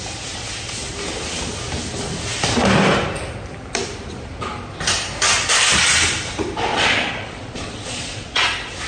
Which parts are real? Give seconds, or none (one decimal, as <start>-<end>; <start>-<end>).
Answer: 0.0-6.7; 8.4-8.9